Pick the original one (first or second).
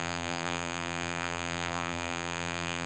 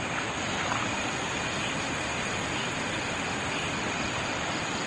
second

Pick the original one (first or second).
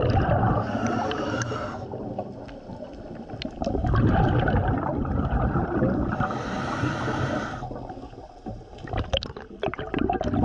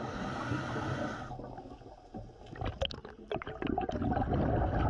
second